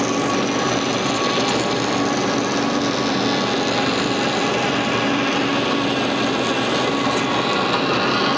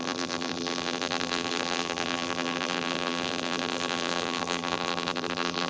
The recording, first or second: first